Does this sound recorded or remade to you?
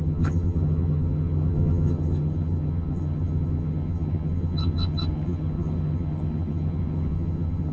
remade